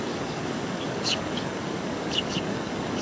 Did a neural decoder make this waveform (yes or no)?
yes